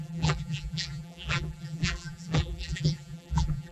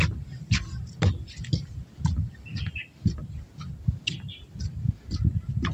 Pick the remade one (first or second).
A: first